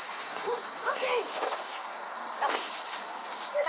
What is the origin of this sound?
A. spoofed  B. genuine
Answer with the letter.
A